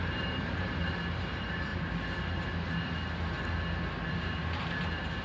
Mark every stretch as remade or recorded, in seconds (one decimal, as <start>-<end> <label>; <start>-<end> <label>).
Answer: 0.0-1.7 remade; 1.7-4.1 recorded; 4.1-5.2 remade